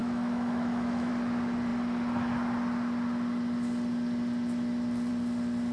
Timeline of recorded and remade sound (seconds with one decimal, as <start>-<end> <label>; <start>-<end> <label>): 0.0-1.1 remade; 1.1-5.7 recorded